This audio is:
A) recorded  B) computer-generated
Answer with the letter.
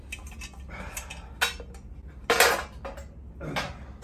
A